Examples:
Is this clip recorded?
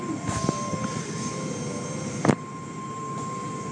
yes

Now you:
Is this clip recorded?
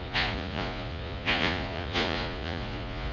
no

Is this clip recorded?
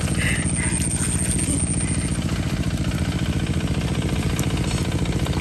yes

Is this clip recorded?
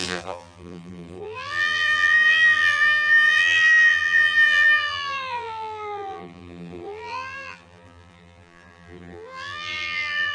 no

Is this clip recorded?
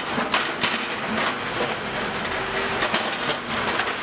yes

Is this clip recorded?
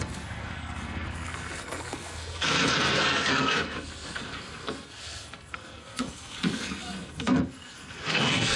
no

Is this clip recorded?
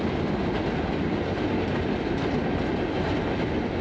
yes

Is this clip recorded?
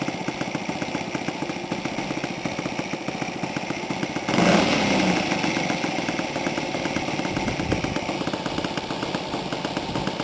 yes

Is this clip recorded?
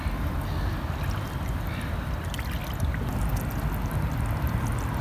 yes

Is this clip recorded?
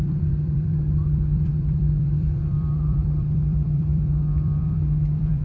no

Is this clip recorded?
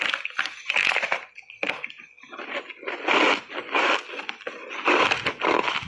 yes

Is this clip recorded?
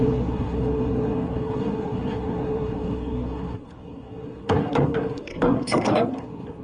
no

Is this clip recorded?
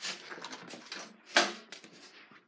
yes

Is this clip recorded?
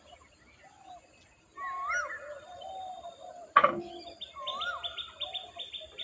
yes